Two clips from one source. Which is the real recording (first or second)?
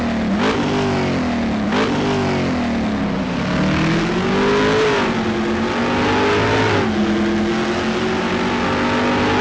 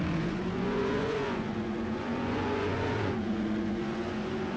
first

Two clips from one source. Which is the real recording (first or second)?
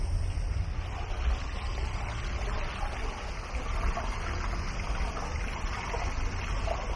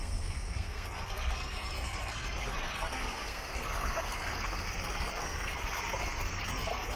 first